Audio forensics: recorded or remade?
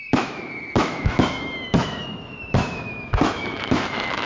remade